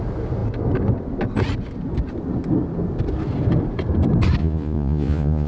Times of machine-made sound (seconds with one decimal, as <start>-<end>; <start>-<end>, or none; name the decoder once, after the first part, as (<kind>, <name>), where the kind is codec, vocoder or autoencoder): 4.4-5.5 (vocoder, Vocos)